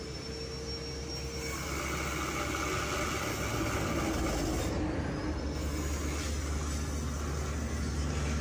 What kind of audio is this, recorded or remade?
recorded